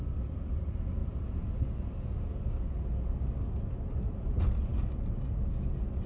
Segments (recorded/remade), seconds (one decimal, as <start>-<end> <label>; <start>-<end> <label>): 0.0-6.1 recorded